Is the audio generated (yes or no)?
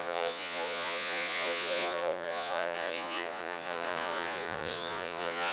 yes